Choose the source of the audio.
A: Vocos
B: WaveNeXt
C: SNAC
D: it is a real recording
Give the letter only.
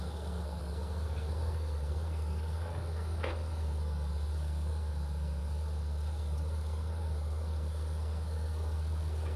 C